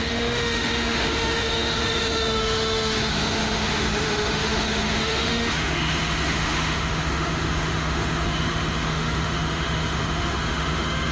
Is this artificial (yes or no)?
yes